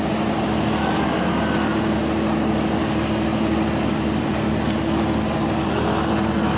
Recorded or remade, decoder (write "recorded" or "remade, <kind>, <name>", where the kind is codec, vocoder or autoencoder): recorded